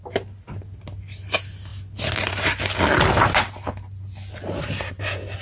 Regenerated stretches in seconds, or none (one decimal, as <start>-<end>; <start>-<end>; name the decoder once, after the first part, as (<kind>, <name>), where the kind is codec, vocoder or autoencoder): none